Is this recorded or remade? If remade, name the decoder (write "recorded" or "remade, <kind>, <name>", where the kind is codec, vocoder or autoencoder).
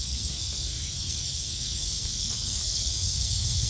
remade, codec, SNAC